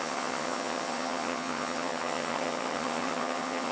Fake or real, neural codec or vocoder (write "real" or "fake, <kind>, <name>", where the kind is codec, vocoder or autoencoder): fake, vocoder, HiFi-GAN